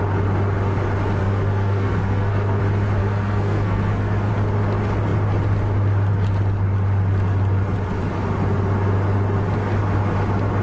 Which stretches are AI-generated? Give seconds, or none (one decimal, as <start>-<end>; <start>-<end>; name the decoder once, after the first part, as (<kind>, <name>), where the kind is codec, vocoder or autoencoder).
1.2-2.6 (codec, SNAC); 3.0-4.3